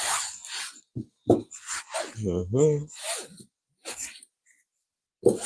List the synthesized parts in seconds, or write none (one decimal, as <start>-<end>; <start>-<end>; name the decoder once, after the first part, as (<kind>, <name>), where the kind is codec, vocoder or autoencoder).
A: none